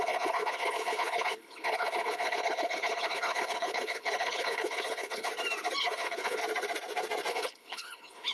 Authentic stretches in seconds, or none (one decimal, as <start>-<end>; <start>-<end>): 5.3-5.8; 6.4-7.3

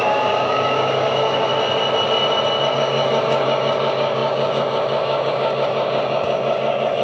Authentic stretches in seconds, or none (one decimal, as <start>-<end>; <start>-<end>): 1.5-2.7

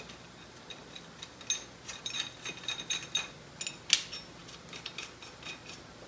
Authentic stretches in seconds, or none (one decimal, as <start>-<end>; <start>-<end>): 0.0-6.1

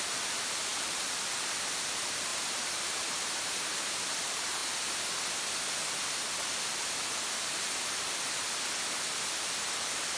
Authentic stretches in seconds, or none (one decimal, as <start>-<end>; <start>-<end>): 0.0-2.3; 4.1-10.2

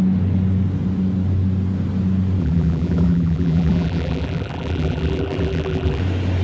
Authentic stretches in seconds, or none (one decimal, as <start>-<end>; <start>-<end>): 0.0-2.4; 6.0-6.4

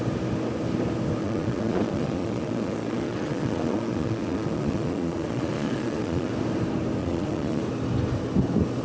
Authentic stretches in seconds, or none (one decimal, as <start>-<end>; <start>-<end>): 0.0-1.2; 6.3-7.0; 7.6-8.8

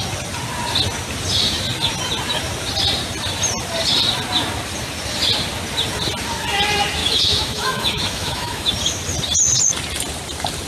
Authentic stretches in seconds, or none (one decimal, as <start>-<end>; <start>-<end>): 0.0-7.0; 8.7-10.7

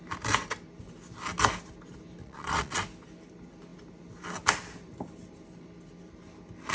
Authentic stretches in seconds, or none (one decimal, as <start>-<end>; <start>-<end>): 0.0-2.2; 2.8-6.7